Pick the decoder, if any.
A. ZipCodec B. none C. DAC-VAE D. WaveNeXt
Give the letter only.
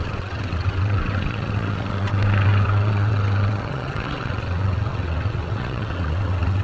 D